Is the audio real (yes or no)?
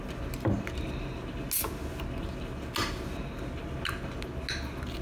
yes